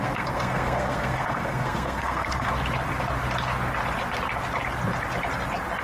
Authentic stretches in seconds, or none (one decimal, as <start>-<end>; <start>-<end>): 2.5-5.8